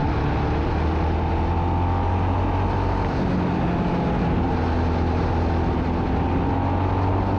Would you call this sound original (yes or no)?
yes